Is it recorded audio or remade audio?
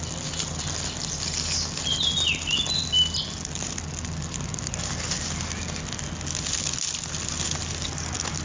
recorded